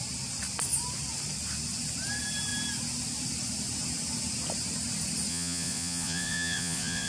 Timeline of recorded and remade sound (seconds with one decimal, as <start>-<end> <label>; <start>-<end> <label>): 0.0-5.3 recorded; 5.3-7.1 remade